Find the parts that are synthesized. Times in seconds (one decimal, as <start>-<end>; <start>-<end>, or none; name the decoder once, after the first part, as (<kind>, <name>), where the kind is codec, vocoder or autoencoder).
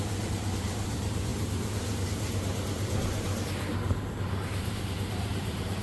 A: 0.0-5.8 (vocoder, BigVGAN v2)